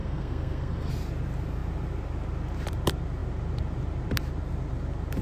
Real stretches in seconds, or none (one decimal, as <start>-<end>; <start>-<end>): 0.9-5.2